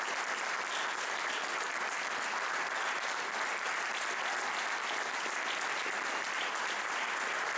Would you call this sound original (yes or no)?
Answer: yes